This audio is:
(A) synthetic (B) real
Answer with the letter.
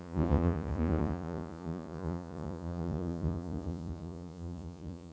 A